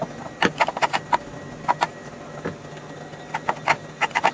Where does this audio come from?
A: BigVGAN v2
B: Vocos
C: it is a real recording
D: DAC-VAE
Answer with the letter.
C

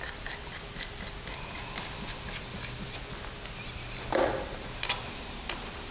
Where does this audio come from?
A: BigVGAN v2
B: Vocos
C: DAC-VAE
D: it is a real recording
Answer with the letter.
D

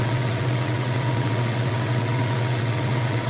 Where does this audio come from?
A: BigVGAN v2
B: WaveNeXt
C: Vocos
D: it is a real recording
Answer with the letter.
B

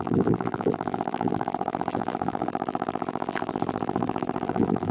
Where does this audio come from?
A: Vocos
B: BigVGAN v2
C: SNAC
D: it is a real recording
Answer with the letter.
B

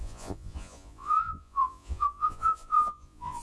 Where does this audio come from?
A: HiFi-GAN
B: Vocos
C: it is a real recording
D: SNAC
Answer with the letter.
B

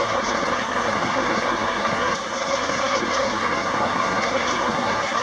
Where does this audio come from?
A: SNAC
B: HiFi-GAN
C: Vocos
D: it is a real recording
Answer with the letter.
A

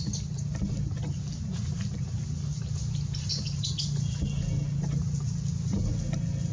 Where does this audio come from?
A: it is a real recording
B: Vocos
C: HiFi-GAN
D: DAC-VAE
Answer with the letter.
A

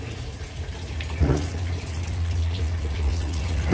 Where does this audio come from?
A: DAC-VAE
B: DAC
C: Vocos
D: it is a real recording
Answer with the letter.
C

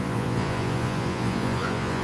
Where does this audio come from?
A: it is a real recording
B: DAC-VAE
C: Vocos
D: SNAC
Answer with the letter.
C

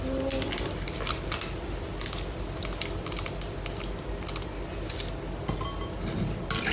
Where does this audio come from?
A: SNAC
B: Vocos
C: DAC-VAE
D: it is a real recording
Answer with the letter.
D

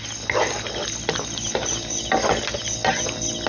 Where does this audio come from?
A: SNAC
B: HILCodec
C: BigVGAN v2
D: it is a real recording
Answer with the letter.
D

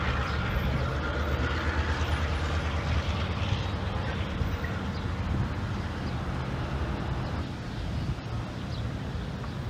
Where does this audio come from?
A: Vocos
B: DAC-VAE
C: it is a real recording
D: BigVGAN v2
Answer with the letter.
C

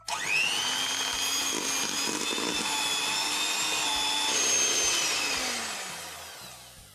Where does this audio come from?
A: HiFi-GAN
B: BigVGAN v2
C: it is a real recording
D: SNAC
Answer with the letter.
C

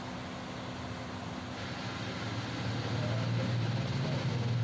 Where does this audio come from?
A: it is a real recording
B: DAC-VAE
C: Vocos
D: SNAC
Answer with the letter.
A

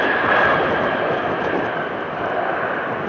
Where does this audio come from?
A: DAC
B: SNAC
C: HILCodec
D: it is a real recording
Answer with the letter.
D